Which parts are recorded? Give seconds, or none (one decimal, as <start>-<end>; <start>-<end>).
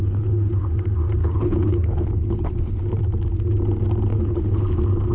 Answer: 0.6-1.2; 3.0-4.1; 4.6-5.1